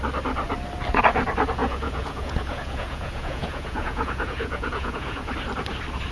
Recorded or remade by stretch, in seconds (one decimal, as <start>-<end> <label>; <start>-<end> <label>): 0.0-1.6 recorded; 1.6-5.3 remade; 5.3-6.1 recorded